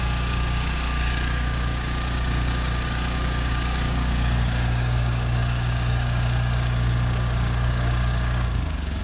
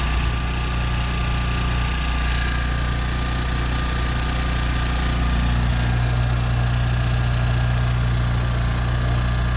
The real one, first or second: second